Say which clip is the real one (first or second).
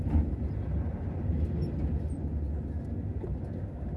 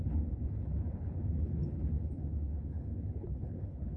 first